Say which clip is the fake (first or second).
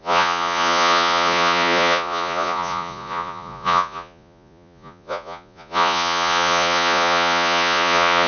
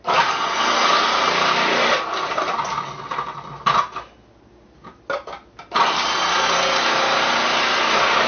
first